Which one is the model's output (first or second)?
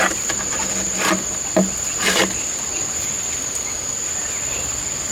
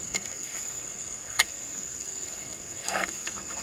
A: second